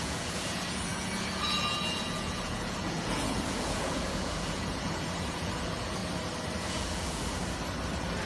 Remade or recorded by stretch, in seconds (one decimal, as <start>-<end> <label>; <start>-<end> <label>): 0.0-6.0 remade; 6.0-6.6 recorded; 6.6-7.4 remade; 7.4-8.3 recorded